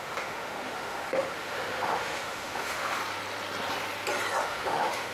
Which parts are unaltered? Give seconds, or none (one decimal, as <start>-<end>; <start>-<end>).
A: 3.0-4.4